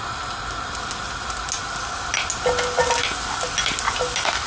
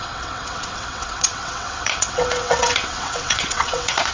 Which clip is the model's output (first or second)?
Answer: second